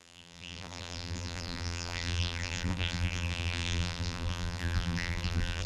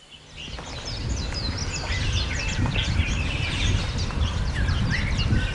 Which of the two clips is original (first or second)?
second